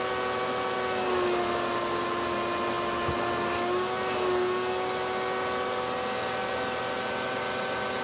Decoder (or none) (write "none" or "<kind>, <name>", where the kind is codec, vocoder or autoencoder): none